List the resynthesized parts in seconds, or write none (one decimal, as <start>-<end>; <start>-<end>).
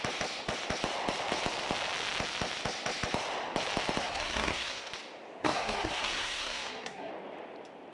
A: 4.0-4.9; 5.4-7.1